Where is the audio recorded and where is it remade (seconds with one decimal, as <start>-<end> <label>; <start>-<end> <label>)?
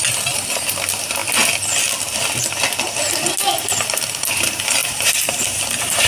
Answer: 0.0-1.2 remade; 1.2-4.3 recorded; 4.3-6.1 remade